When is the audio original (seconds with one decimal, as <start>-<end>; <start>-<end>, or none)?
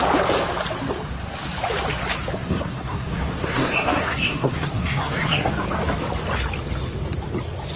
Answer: 0.0-2.4; 5.5-7.8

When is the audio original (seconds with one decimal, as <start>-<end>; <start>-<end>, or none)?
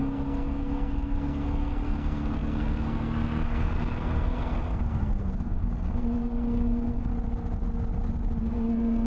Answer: 7.1-8.4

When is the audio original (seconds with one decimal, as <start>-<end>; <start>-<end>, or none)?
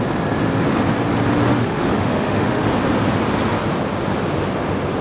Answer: 0.0-1.5; 2.7-5.0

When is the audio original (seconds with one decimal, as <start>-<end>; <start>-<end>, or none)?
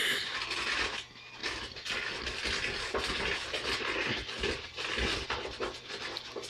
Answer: 0.0-6.5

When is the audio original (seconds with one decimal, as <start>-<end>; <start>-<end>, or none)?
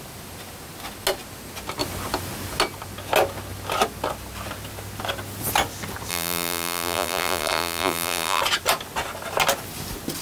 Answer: 0.0-6.1; 8.4-10.2